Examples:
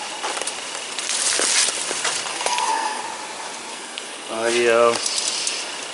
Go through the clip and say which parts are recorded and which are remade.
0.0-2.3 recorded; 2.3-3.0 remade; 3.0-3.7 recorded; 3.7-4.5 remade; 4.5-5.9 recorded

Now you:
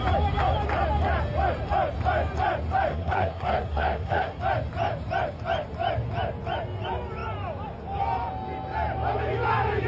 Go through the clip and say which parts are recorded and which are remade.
0.0-2.9 recorded; 2.9-4.4 remade; 4.4-9.9 recorded

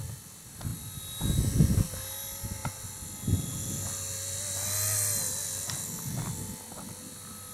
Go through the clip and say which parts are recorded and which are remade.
0.0-7.5 recorded

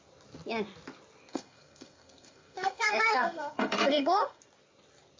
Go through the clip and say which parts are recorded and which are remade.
0.0-1.3 recorded; 1.3-4.4 remade; 4.4-5.2 recorded

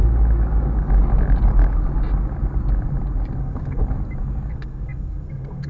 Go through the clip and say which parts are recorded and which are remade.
0.0-3.4 recorded; 3.4-3.8 remade; 3.8-4.5 recorded; 4.5-5.7 remade

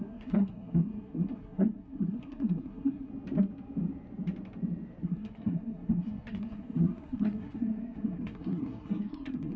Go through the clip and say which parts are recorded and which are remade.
0.0-3.1 remade; 3.1-5.0 recorded; 5.0-9.6 remade

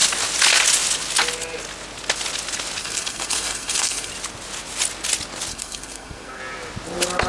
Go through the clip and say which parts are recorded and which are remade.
0.0-2.8 recorded; 2.8-4.1 remade; 4.1-5.5 recorded; 5.5-6.4 remade; 6.4-7.3 recorded

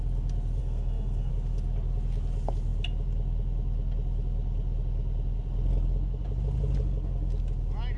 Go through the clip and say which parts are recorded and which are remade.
0.0-0.6 recorded; 0.6-1.3 remade; 1.3-8.0 recorded